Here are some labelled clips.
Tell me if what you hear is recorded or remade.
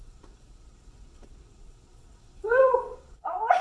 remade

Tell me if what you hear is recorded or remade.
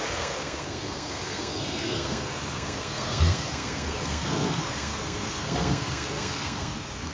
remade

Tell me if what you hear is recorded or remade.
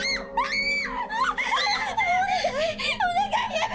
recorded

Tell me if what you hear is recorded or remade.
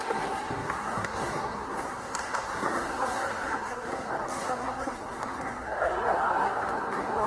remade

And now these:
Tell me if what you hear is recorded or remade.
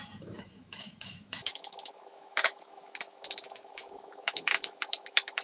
remade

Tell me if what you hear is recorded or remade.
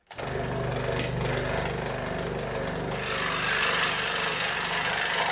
recorded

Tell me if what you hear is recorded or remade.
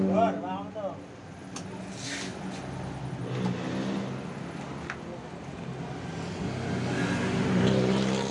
recorded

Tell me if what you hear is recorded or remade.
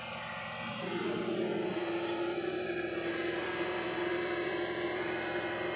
recorded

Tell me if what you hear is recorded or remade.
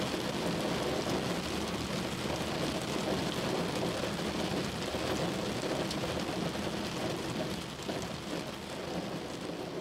recorded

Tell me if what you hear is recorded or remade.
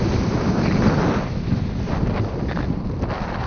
recorded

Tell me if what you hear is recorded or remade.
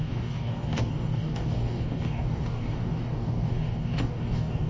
remade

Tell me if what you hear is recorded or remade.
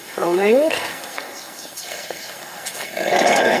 remade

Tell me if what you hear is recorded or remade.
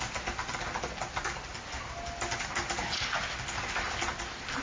recorded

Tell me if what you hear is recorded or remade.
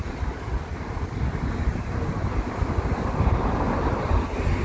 recorded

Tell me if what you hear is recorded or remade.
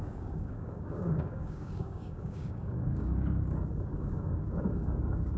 remade